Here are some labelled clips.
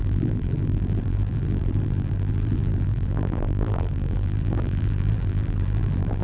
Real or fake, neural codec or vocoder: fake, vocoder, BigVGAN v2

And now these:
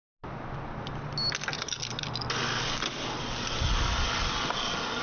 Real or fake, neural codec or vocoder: real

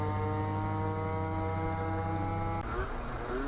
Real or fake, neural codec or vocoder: real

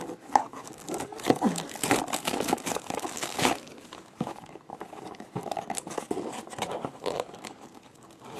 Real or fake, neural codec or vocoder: fake, codec, DAC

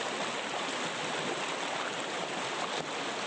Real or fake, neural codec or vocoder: real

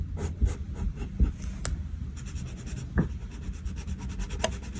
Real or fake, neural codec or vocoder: real